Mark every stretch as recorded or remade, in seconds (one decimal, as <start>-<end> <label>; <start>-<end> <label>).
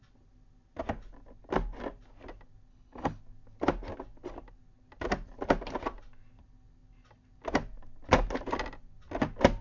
0.0-2.7 recorded; 2.7-3.2 remade; 3.2-9.6 recorded